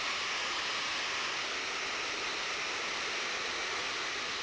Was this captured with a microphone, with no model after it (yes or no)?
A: yes